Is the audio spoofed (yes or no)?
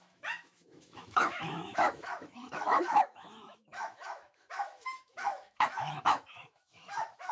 yes